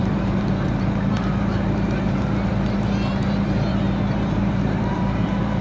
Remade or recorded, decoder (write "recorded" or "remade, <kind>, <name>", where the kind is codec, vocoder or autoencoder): remade, vocoder, BigVGAN v2